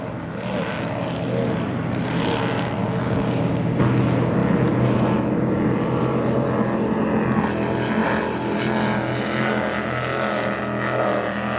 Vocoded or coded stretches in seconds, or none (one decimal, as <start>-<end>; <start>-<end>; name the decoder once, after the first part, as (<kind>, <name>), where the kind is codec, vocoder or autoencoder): 2.8-3.8 (codec, DAC)